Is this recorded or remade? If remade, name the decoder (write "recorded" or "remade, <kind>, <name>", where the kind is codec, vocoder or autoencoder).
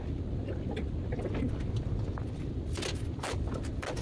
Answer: recorded